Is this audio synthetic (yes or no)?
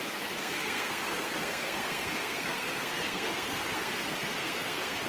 yes